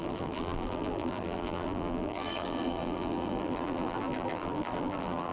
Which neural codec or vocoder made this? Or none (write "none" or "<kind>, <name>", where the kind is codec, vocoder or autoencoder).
vocoder, BigVGAN v2